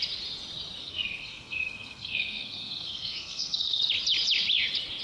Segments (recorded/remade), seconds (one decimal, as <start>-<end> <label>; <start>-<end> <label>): 0.0-0.8 recorded; 0.8-3.8 remade; 3.8-5.0 recorded